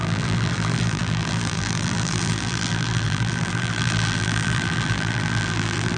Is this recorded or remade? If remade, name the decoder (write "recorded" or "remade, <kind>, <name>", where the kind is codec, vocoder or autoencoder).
remade, vocoder, BigVGAN v2